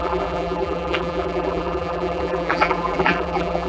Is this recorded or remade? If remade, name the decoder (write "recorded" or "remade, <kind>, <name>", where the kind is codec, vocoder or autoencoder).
remade, vocoder, BigVGAN v2